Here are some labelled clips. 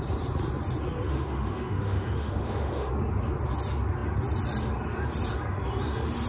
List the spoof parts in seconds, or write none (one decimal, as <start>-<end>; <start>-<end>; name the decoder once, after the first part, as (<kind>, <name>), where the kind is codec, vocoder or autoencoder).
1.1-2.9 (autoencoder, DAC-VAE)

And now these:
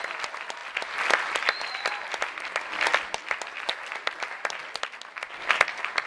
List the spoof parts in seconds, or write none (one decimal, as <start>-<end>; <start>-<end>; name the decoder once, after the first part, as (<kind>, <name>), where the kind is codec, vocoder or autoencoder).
none

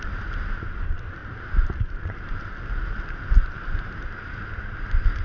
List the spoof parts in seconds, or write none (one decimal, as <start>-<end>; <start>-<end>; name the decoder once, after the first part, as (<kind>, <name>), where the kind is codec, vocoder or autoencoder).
1.2-4.3 (vocoder, BigVGAN v2)